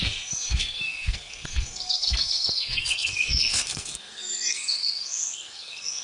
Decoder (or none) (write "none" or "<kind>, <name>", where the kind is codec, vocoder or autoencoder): codec, SNAC